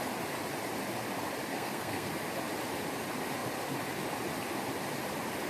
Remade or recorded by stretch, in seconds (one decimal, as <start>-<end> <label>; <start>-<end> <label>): 0.0-1.5 recorded; 1.5-2.1 remade; 2.1-5.5 recorded